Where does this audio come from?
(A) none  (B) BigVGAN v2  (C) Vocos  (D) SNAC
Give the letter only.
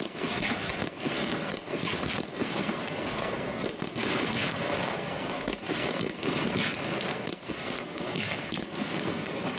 D